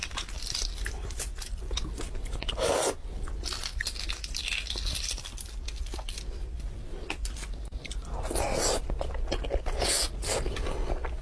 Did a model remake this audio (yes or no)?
no